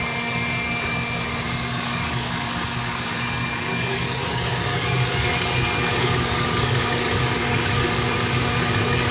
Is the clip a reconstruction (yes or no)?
yes